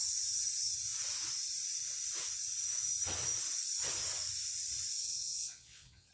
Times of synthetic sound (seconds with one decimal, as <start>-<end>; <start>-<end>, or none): 5.0-6.1